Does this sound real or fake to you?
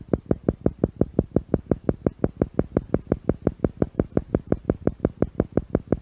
real